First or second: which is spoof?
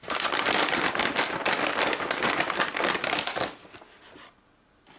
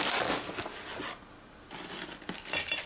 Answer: first